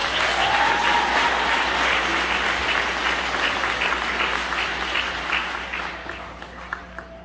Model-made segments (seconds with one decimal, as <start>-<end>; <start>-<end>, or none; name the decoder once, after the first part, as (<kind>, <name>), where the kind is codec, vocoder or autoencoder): none